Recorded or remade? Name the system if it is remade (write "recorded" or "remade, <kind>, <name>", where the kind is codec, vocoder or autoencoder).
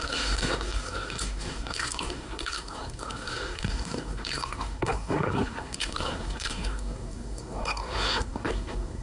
remade, codec, SNAC